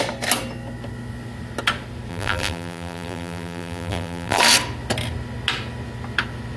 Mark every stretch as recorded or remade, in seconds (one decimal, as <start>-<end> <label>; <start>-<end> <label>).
0.0-2.1 recorded; 2.1-4.4 remade; 4.4-6.6 recorded